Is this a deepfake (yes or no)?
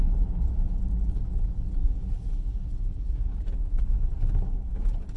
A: no